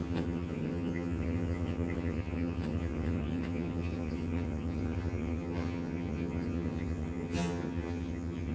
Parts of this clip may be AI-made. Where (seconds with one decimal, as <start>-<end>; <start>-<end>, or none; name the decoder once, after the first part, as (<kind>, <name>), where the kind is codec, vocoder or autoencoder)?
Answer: 0.0-8.5 (vocoder, HiFi-GAN)